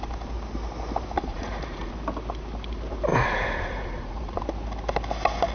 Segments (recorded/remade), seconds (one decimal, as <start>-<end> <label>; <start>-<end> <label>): 0.0-1.3 recorded; 1.3-1.9 remade; 1.9-3.1 recorded; 3.1-4.4 remade; 4.4-5.5 recorded